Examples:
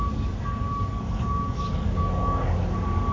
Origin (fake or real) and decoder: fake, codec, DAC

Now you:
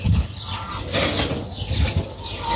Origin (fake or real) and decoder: real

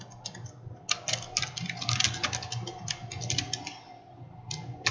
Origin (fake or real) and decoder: real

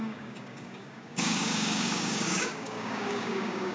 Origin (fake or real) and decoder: fake, codec, DAC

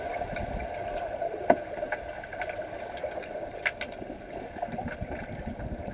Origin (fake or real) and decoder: real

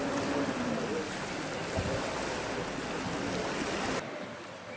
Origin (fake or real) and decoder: real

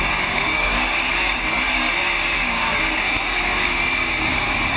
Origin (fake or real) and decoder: fake, codec, DAC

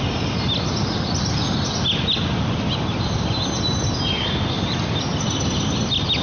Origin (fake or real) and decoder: real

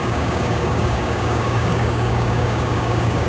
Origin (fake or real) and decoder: fake, codec, DAC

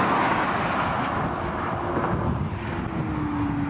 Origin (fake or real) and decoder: real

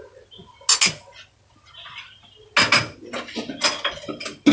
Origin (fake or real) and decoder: real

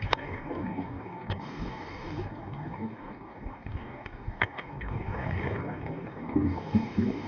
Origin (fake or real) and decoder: fake, codec, DAC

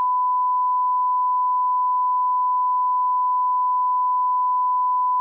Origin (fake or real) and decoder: real